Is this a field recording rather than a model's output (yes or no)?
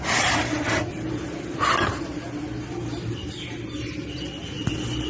yes